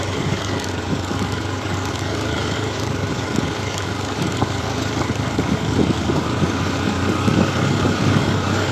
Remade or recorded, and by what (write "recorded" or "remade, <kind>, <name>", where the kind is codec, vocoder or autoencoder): remade, codec, DAC